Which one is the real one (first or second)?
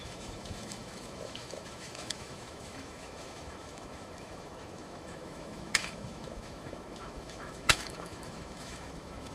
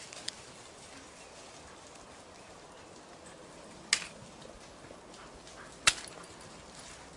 second